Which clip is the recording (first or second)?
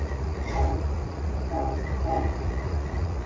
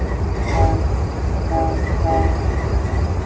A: second